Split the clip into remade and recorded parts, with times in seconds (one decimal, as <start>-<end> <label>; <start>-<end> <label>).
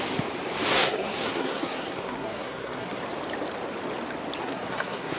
0.0-0.7 recorded; 0.7-3.0 remade; 3.0-4.4 recorded; 4.4-5.2 remade